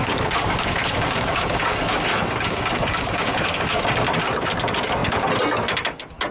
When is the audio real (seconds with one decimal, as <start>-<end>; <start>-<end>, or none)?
3.8-6.3